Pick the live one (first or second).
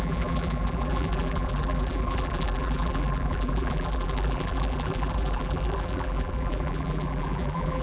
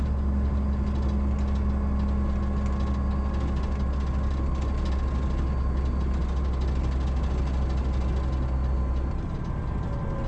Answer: second